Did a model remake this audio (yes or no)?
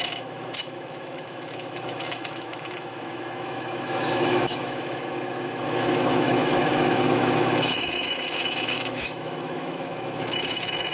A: yes